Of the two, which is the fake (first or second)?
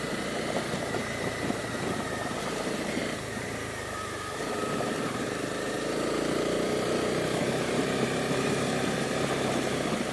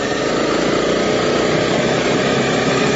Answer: first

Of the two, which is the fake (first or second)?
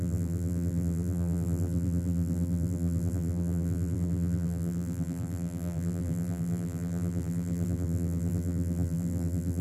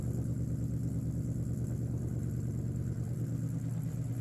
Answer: first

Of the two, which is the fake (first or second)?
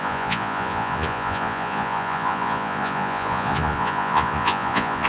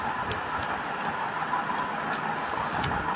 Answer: first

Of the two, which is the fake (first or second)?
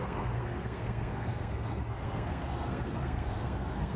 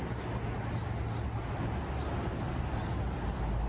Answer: first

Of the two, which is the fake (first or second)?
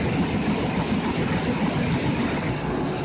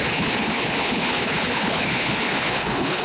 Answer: second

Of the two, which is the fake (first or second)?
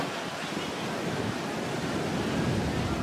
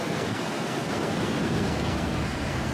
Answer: second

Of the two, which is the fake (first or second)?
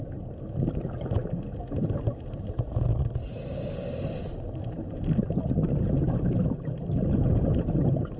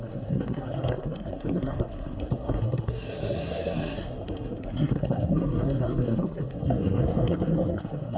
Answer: second